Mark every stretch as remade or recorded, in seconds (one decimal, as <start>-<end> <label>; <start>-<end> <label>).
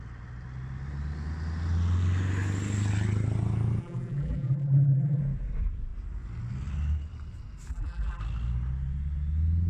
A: 0.0-3.8 recorded; 3.8-5.2 remade; 5.2-7.7 recorded; 7.7-8.2 remade; 8.2-9.7 recorded